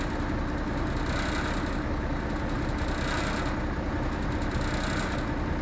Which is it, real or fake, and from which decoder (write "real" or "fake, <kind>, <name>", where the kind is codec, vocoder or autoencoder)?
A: real